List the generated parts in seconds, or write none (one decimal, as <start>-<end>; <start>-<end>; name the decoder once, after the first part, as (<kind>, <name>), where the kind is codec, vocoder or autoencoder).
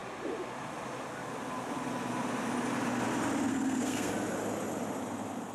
3.5-4.1 (codec, SNAC)